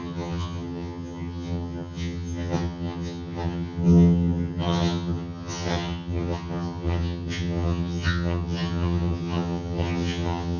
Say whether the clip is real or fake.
fake